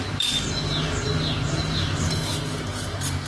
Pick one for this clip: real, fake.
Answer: real